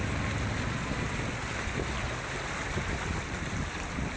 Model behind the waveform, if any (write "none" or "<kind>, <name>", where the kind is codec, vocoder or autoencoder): none